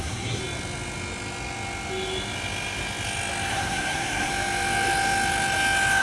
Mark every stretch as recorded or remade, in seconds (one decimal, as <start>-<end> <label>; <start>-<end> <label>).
0.0-0.4 remade; 0.4-3.5 recorded; 3.5-4.3 remade; 4.3-6.0 recorded